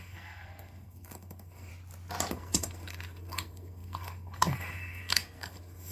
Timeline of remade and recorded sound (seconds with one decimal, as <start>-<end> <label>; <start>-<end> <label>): 0.0-1.7 remade; 1.7-2.3 recorded; 2.3-5.9 remade